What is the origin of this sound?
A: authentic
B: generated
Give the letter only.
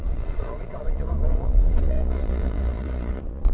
B